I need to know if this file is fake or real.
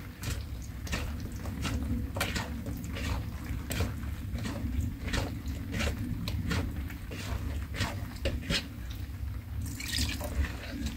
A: real